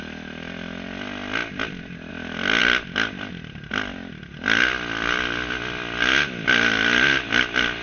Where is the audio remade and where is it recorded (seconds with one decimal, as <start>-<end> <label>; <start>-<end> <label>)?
0.0-7.8 recorded